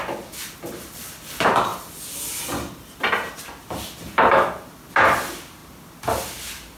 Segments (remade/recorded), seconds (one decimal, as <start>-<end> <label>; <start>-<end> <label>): 0.0-6.8 recorded